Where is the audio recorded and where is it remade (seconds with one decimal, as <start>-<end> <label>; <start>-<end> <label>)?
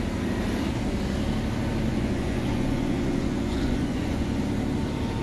0.0-1.9 recorded; 1.9-4.4 remade; 4.4-5.2 recorded